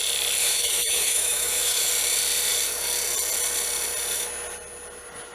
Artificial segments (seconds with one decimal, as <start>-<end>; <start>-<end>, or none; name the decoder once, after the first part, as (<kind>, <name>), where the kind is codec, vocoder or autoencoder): 0.4-1.9 (autoencoder, DAC-VAE)